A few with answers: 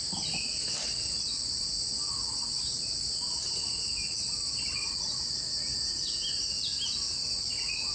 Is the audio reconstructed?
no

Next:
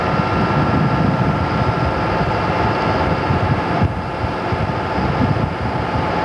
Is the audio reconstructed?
no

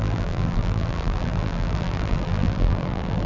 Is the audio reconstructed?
yes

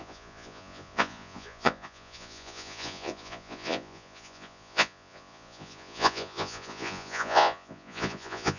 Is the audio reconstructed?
yes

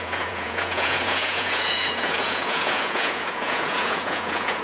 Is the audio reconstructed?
yes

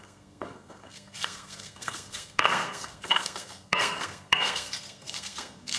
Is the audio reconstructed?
yes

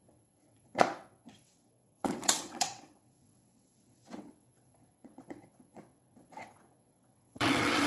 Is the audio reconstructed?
yes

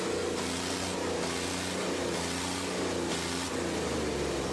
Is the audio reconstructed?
no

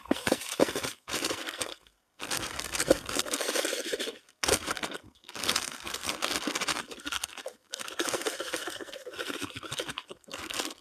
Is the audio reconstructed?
yes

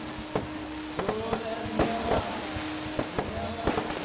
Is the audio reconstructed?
no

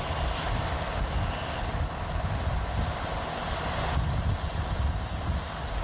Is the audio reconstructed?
no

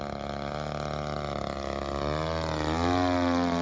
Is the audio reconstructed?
no